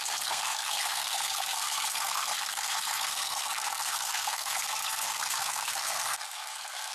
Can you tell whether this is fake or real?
fake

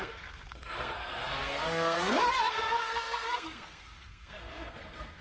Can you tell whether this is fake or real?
fake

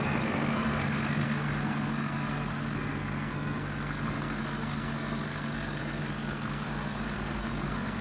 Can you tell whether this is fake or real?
fake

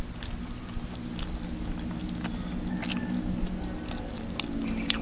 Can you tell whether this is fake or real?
real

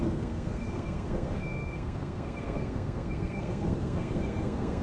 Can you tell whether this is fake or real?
fake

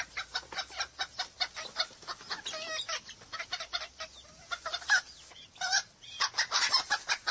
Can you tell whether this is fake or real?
real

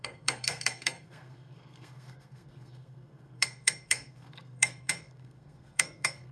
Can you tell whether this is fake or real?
fake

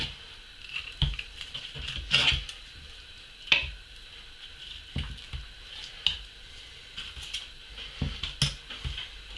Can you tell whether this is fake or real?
real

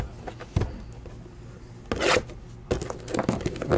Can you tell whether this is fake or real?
real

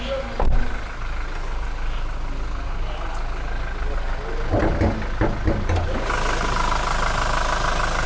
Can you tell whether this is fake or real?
real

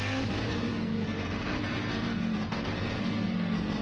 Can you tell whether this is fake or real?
fake